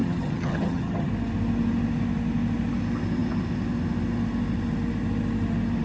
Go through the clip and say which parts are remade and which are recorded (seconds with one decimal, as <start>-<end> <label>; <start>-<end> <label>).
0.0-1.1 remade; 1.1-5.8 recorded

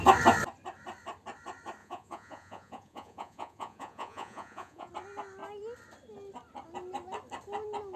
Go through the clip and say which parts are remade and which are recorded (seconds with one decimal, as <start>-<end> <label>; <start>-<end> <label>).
0.0-1.8 recorded; 1.8-4.9 remade; 4.9-8.0 recorded

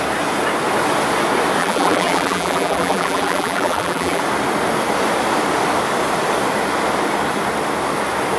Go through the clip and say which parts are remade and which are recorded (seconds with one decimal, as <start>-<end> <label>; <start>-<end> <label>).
0.0-1.6 recorded; 1.6-4.2 remade; 4.2-8.4 recorded